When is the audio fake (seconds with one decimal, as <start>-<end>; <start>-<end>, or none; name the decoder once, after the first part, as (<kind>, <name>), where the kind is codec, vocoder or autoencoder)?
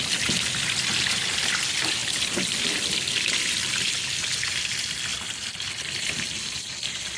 none